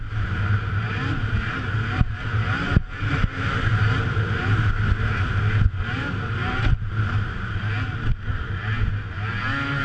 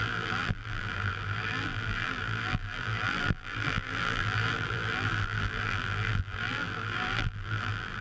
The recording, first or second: first